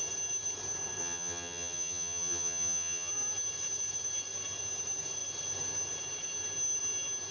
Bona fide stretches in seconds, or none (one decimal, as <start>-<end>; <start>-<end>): 0.0-1.0; 3.1-7.3